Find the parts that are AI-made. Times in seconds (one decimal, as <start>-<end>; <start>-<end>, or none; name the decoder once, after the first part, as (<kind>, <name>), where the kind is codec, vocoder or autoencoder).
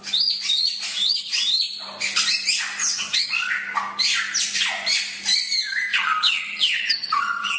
0.9-1.6 (vocoder, HiFi-GAN); 2.8-3.3; 5.9-7.6